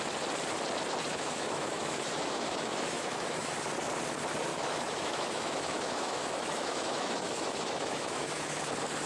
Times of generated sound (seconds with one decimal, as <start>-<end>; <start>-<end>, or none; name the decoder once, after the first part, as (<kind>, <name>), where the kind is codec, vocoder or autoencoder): 1.1-3.5 (autoencoder, DAC-VAE); 4.5-8.6